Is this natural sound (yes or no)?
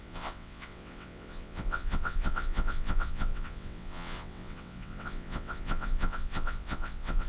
no